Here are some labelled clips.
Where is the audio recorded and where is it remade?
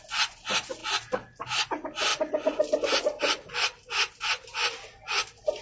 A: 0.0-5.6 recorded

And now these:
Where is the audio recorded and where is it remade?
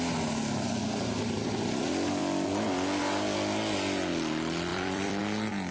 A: 0.0-0.8 recorded; 0.8-1.8 remade; 1.8-4.7 recorded; 4.7-5.2 remade; 5.2-5.7 recorded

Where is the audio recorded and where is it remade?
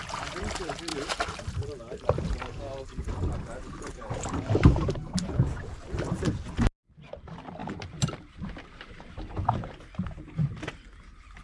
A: 0.0-0.9 recorded; 0.9-6.0 remade; 6.0-7.6 recorded; 7.6-8.9 remade; 8.9-11.4 recorded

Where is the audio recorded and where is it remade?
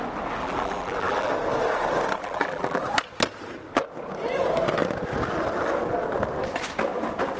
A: 0.0-0.4 recorded; 0.4-1.3 remade; 1.3-2.2 recorded; 2.2-2.8 remade; 2.8-7.4 recorded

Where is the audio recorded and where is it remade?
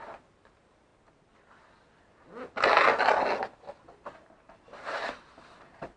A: 0.0-0.9 remade; 0.9-4.1 recorded; 4.1-6.0 remade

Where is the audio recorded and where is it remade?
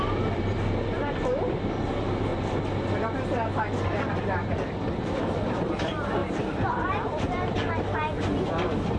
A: 0.0-2.3 remade; 2.3-4.0 recorded; 4.0-9.0 remade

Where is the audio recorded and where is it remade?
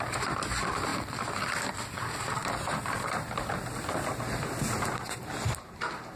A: 0.0-2.4 recorded; 2.4-4.6 remade; 4.6-6.2 recorded